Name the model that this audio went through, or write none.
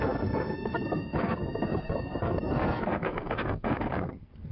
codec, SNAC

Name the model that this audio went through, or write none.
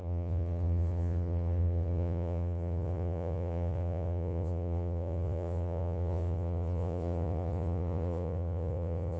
vocoder, Vocos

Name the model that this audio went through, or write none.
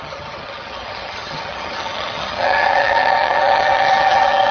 vocoder, HiFi-GAN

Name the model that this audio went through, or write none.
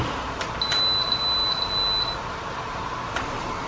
none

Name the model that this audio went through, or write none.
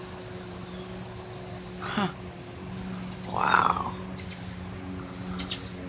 none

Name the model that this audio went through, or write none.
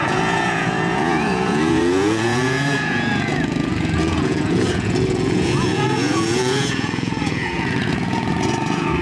vocoder, Vocos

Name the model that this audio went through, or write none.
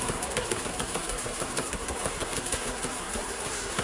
codec, SNAC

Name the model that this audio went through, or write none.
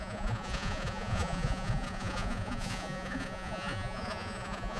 vocoder, Vocos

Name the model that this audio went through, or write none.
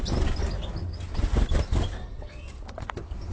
none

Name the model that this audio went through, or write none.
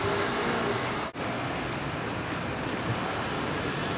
none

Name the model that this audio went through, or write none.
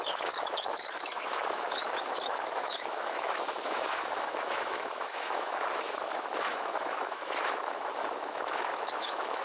autoencoder, DAC-VAE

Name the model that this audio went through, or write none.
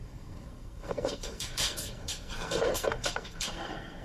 codec, SNAC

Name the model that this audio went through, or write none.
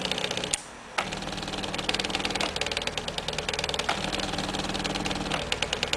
none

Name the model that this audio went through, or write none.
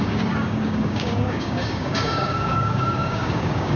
codec, DAC